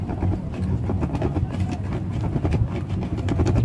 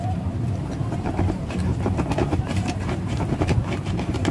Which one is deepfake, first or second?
second